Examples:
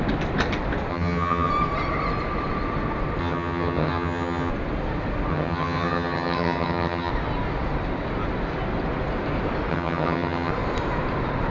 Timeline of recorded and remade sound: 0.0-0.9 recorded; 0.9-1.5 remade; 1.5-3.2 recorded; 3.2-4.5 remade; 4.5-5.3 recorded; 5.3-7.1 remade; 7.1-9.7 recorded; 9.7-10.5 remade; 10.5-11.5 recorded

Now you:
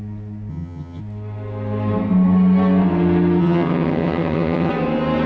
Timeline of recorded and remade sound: 0.0-0.5 recorded; 0.5-1.0 remade; 1.0-3.4 recorded; 3.4-4.7 remade; 4.7-5.3 recorded

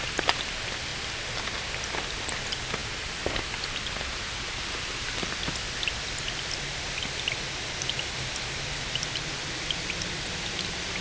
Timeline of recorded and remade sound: 0.0-11.0 recorded

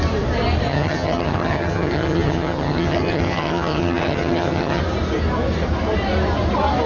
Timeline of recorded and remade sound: 0.0-0.7 recorded; 0.7-4.8 remade; 4.8-6.9 recorded

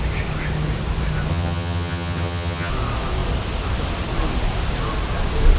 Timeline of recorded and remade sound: 0.0-1.3 recorded; 1.3-2.7 remade; 2.7-5.6 recorded

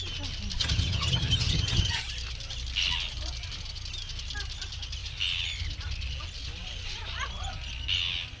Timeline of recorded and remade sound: 0.0-0.6 recorded; 0.6-2.0 remade; 2.0-8.4 recorded

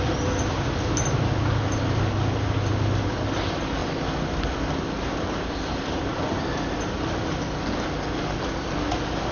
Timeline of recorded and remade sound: 0.0-9.3 recorded